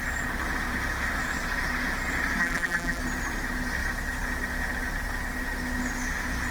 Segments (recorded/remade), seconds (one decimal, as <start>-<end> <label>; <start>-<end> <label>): 0.0-2.4 recorded; 2.4-3.0 remade; 3.0-6.5 recorded